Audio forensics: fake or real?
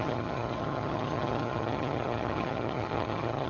fake